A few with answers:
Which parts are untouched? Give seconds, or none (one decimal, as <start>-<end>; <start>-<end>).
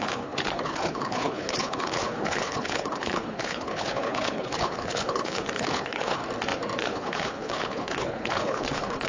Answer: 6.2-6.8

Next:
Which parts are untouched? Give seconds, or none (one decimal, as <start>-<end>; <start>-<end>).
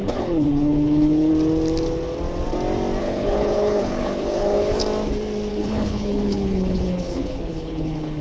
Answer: 1.3-3.0; 4.8-5.5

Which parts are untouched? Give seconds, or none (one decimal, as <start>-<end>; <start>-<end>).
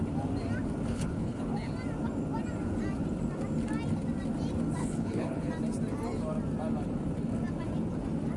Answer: 0.0-0.9; 1.4-4.8; 5.5-8.4